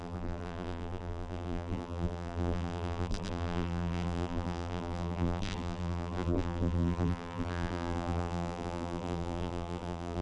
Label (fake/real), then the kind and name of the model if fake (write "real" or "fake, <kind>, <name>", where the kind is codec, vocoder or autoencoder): fake, vocoder, BigVGAN v2